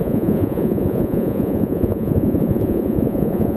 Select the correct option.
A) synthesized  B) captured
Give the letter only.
A